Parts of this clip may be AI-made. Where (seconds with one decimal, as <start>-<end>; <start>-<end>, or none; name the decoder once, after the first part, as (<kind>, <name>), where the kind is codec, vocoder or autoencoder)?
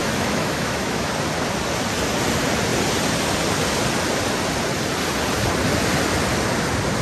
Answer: 0.0-1.1 (autoencoder, DAC-VAE)